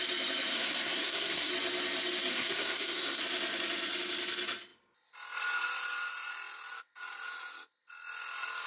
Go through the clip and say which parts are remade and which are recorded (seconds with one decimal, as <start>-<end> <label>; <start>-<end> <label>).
0.0-0.5 recorded; 0.5-1.5 remade; 1.5-2.3 recorded; 2.3-3.2 remade; 3.2-8.7 recorded